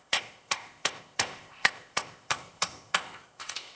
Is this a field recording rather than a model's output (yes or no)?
no